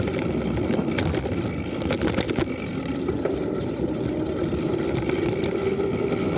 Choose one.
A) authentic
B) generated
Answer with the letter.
A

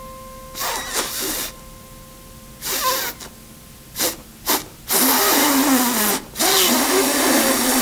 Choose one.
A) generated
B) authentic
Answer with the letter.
B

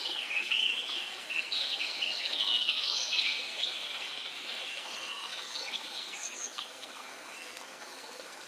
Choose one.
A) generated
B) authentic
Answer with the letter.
A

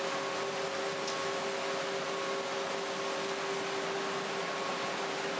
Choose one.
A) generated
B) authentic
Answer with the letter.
B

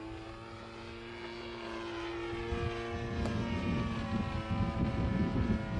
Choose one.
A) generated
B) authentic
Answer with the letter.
B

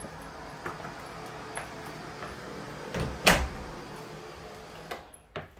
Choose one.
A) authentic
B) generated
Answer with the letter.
A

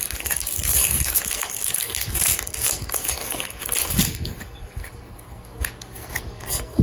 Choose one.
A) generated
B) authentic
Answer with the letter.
A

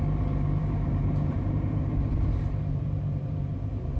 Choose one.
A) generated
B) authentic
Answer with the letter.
A